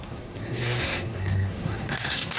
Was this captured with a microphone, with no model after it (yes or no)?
no